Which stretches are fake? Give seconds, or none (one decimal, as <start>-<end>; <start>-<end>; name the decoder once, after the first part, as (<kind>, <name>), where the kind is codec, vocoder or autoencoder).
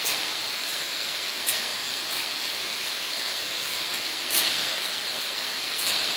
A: 0.0-6.2 (codec, SNAC)